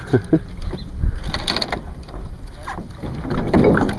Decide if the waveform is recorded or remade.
recorded